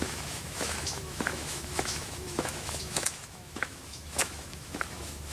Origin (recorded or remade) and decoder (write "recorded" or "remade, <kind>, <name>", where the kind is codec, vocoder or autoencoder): remade, autoencoder, DAC-VAE